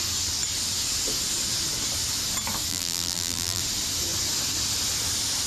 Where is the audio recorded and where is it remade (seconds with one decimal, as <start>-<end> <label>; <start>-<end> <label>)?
0.0-2.7 recorded; 2.7-3.6 remade; 3.6-5.5 recorded